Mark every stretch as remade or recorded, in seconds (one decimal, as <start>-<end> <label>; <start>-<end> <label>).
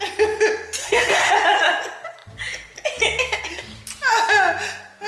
0.0-0.8 recorded; 0.8-1.3 remade; 1.3-5.1 recorded